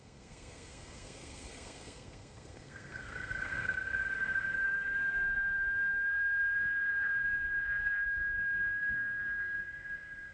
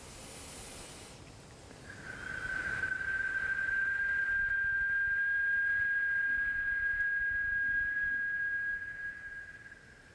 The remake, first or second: first